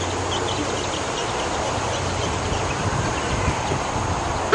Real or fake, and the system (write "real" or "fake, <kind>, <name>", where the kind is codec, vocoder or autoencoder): real